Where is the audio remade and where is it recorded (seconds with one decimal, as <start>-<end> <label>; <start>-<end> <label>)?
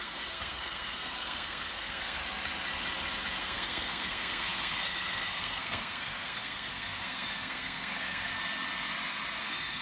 0.0-2.2 remade; 2.2-3.4 recorded; 3.4-8.3 remade; 8.3-9.4 recorded; 9.4-9.8 remade